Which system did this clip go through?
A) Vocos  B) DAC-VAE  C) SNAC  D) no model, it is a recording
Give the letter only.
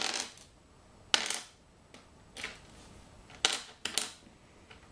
D